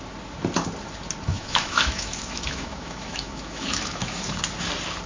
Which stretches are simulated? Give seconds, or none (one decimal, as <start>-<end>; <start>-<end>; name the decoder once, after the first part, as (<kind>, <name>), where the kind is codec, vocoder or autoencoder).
1.3-4.4 (autoencoder, DAC-VAE)